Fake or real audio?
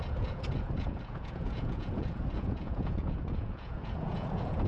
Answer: fake